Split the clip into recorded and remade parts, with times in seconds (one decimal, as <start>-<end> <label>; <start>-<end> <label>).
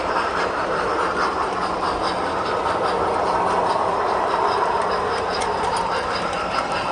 0.0-0.9 remade; 0.9-3.8 recorded; 3.8-6.9 remade